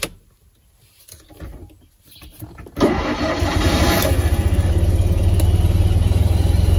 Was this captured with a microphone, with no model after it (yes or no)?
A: yes